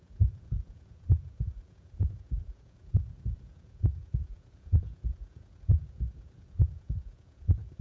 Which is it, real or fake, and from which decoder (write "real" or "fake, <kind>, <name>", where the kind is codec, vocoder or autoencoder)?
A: fake, vocoder, Vocos